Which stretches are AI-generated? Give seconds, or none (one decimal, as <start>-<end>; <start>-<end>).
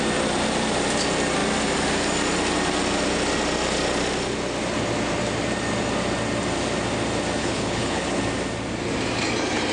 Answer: 7.4-8.2